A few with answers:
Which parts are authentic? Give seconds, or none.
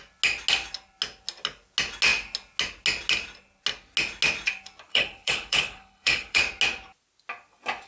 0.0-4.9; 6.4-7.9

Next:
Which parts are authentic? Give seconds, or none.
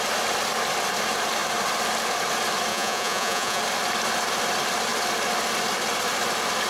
0.0-2.7; 3.6-6.7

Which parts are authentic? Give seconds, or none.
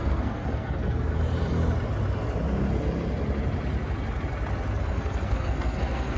1.1-4.8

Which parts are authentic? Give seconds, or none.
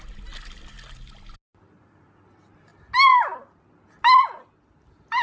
0.0-5.2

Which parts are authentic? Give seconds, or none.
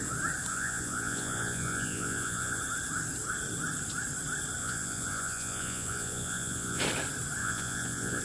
0.0-0.5; 2.6-4.6; 6.8-7.4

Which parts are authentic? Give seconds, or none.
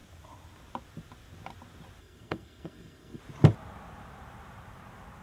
0.0-2.0; 3.2-5.2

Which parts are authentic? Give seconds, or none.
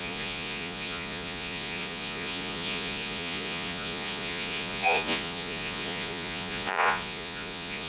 none